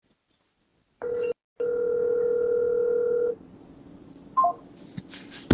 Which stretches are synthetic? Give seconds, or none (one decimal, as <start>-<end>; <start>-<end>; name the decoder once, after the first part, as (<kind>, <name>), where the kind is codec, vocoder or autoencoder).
none